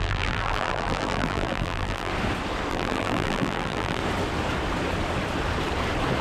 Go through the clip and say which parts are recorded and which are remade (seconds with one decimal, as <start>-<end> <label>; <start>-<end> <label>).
0.0-2.1 remade; 2.1-2.7 recorded; 2.7-4.0 remade; 4.0-6.2 recorded